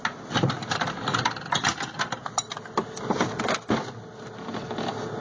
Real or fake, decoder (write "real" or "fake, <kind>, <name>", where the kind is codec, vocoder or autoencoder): real